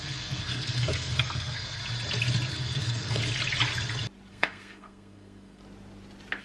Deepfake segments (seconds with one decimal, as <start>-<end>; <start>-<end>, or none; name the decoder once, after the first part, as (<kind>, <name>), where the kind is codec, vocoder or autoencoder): 0.0-1.8 (codec, SNAC); 2.5-3.2; 4.3-5.6